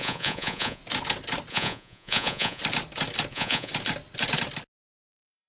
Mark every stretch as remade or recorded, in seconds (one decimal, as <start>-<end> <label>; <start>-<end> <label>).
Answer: 0.0-0.8 remade; 0.8-1.5 recorded; 1.5-2.6 remade; 2.6-3.3 recorded; 3.3-3.7 remade; 3.7-5.1 recorded; 5.1-5.5 remade